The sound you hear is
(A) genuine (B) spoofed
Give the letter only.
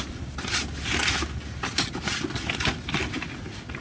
A